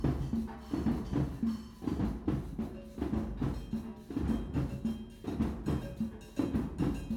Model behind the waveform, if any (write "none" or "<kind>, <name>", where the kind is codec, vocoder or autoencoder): none